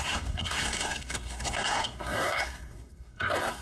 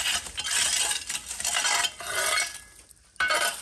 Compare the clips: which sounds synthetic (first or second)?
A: first